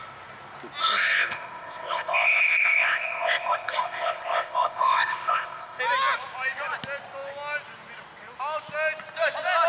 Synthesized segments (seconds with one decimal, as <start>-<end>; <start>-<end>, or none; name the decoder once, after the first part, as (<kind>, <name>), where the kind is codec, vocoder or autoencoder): 0.8-5.8 (codec, ZipCodec)